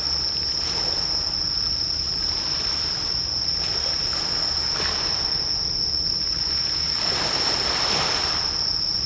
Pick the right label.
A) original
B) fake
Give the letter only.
A